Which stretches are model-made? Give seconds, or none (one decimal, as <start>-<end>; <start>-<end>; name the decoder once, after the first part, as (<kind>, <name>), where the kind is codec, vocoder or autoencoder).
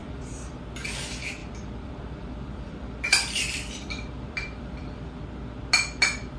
0.0-0.6 (vocoder, BigVGAN v2); 1.4-5.2